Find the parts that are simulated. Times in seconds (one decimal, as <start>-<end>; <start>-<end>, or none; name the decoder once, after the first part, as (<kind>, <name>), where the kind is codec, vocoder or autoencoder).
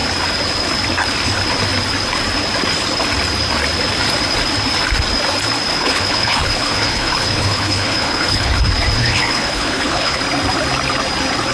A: 5.7-8.6 (codec, HILCodec); 9.0-10.2